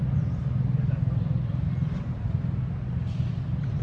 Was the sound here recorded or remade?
recorded